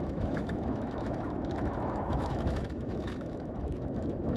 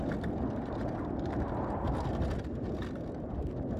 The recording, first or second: second